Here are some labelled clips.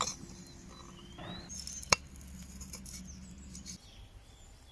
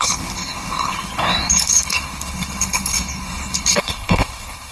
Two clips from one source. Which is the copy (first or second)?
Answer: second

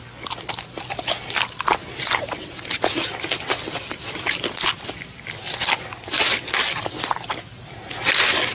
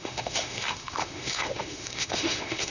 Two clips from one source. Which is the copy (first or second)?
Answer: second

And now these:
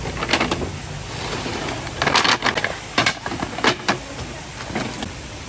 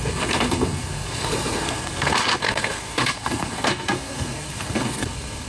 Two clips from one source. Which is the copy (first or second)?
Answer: second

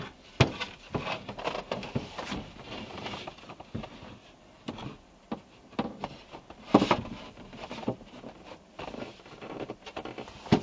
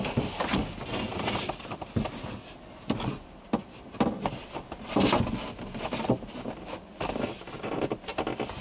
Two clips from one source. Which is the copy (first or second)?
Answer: first